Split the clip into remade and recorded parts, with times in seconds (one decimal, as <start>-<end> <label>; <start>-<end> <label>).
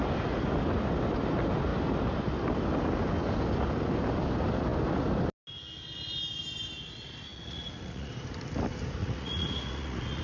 0.0-7.3 recorded; 7.3-8.1 remade; 8.1-9.0 recorded; 9.0-10.2 remade